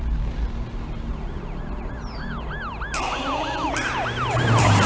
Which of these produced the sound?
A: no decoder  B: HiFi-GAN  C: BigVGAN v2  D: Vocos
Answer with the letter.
A